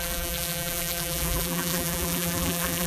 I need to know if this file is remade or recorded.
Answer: remade